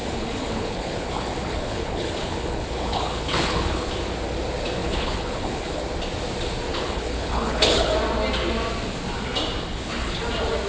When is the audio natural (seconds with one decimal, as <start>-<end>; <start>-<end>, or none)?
3.9-4.8; 5.8-6.7; 7.9-9.7; 10.2-10.7